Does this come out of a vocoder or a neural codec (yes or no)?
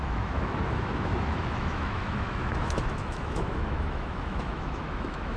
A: yes